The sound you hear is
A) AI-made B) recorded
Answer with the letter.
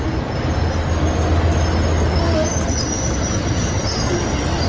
B